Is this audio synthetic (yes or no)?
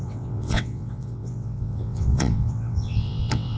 yes